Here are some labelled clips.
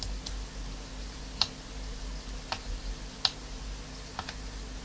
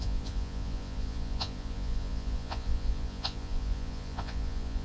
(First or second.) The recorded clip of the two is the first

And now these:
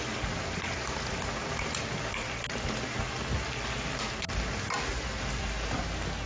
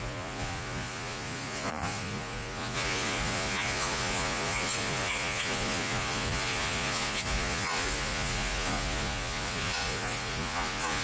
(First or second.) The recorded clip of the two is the first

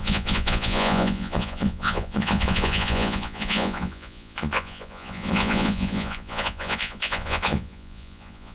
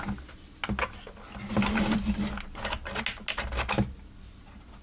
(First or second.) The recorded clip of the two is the second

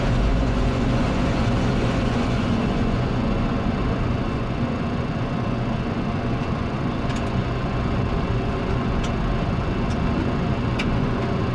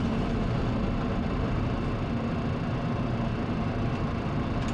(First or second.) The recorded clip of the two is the second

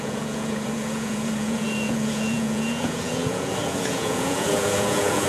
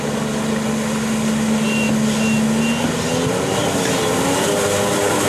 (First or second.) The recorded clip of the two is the second